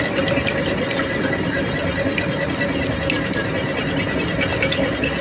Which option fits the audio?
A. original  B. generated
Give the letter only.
A